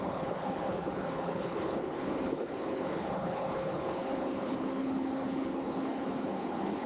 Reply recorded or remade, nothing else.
remade